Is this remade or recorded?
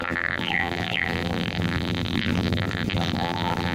remade